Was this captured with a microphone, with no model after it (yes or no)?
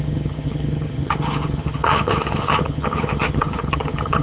no